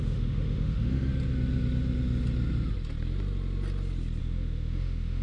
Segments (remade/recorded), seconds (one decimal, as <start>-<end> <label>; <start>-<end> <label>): 0.0-1.1 remade; 1.1-4.2 recorded; 4.2-5.2 remade